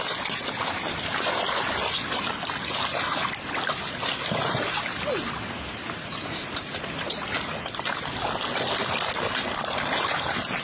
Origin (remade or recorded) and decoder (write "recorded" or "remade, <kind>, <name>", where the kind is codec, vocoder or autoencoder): recorded